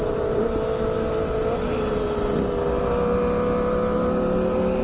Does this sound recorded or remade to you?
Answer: recorded